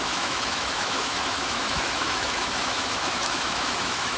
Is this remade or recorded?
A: remade